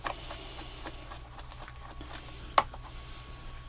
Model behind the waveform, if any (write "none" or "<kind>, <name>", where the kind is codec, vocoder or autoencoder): none